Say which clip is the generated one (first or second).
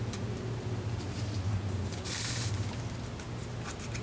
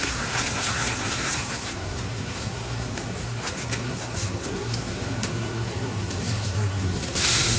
second